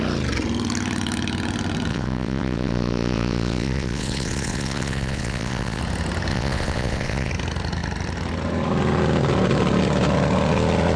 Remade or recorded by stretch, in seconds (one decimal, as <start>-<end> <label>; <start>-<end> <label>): 0.0-1.9 recorded; 1.9-5.8 remade; 5.8-6.3 recorded; 6.3-7.3 remade; 7.3-11.0 recorded